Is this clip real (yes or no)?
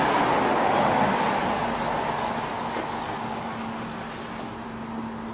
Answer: yes